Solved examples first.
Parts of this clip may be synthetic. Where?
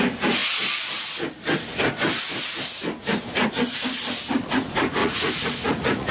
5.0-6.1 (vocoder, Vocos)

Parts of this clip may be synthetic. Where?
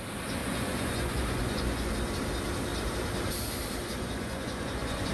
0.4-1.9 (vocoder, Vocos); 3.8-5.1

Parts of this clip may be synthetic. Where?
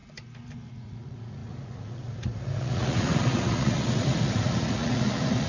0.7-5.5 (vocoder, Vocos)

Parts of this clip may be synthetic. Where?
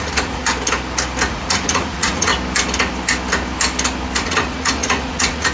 0.0-0.4 (vocoder, Vocos); 1.3-2.3; 4.2-5.5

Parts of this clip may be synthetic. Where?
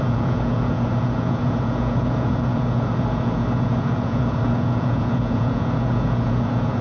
0.0-6.8 (vocoder, Vocos)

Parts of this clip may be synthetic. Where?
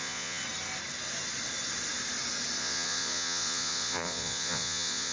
0.0-0.4 (vocoder, Vocos); 2.6-5.1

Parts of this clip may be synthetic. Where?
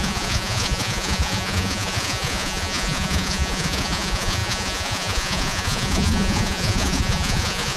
0.0-7.8 (vocoder, Vocos)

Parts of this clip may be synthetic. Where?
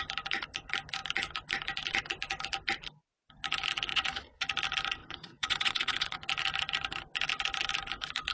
3.9-4.5 (vocoder, Vocos); 5.0-6.2